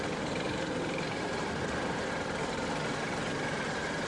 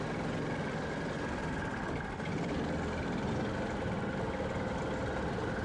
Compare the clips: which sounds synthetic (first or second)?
first